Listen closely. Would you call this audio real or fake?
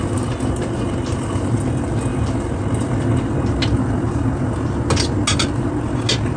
real